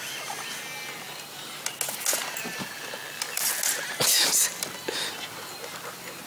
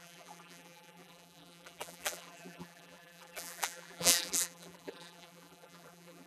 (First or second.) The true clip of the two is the first